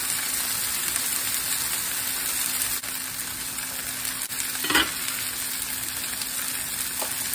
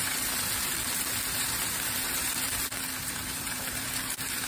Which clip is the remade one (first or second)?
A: second